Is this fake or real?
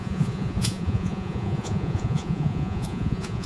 fake